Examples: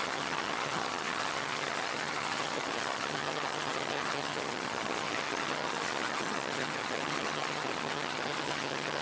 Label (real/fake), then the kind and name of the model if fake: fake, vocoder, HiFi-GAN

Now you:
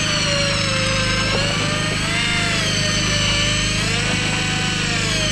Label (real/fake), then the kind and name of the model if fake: real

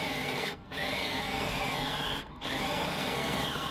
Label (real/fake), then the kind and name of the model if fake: fake, codec, SNAC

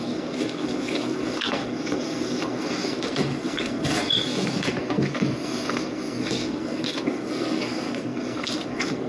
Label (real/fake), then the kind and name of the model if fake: fake, codec, SNAC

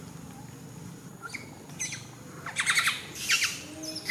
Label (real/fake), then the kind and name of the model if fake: real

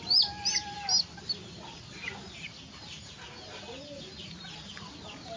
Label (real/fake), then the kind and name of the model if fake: real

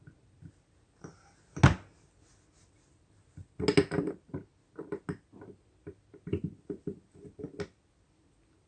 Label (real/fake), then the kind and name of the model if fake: real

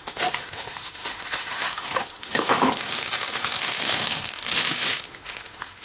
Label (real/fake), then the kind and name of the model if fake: fake, autoencoder, DAC-VAE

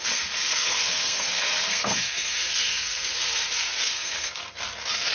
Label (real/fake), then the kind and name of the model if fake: fake, codec, SNAC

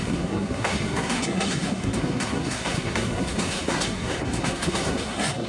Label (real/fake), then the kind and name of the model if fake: fake, codec, SNAC